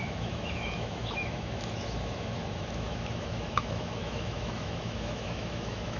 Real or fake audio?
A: fake